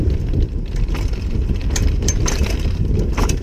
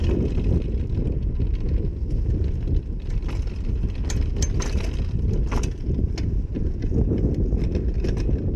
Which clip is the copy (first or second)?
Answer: first